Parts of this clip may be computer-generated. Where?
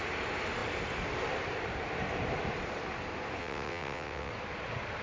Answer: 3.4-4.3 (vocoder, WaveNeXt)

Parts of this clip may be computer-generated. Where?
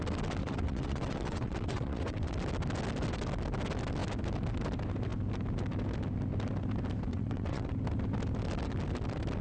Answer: 0.4-2.3 (vocoder, WaveNeXt); 7.1-7.7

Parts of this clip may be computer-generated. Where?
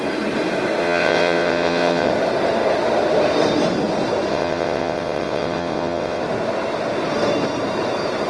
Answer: 0.8-2.1 (vocoder, WaveNeXt); 4.3-6.2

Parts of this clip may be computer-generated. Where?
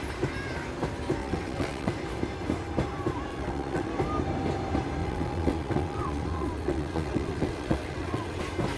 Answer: 1.2-1.9 (vocoder, WaveNeXt); 3.3-3.9; 5.0-8.4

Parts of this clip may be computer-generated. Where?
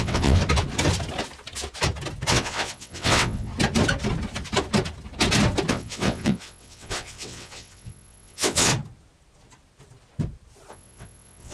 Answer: 0.0-0.4 (vocoder, WaveNeXt); 2.3-3.5; 5.7-8.7; 10.7-11.5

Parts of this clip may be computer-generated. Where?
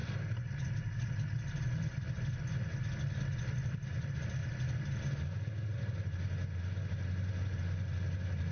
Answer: none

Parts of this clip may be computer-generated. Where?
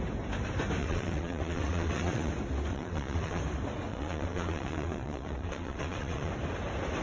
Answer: 0.8-2.3 (vocoder, WaveNeXt); 2.7-3.4; 3.9-6.3